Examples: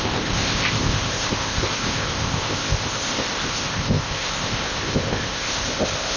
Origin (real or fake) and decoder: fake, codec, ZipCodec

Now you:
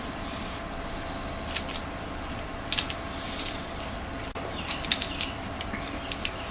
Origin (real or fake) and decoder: real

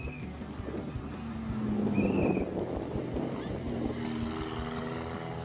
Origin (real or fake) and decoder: real